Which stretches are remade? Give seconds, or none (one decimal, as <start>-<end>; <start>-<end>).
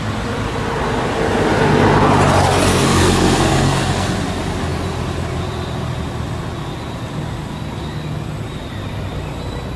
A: 2.7-4.1